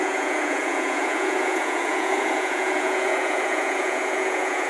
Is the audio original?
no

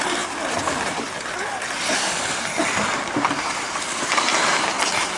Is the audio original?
yes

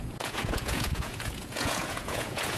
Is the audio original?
no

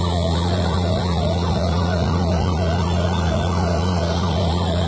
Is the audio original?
no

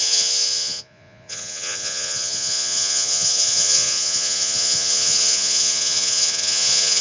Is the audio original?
no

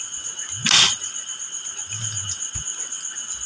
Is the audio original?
yes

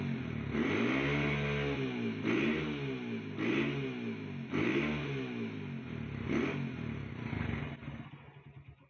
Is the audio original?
yes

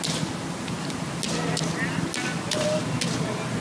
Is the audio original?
yes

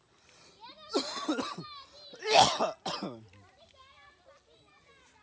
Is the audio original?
yes